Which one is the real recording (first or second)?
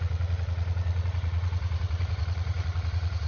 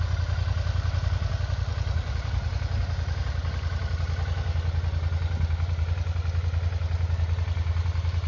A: second